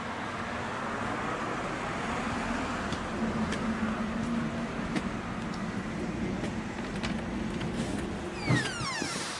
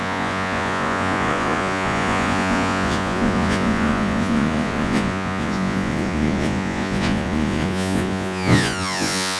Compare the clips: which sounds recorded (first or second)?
first